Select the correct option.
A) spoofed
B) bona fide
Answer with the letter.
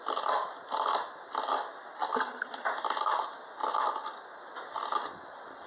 B